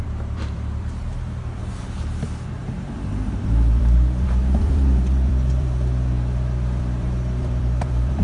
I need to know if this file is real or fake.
fake